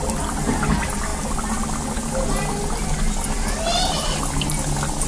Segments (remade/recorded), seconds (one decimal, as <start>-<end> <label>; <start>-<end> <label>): 0.0-5.1 recorded